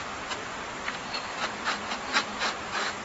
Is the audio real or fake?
fake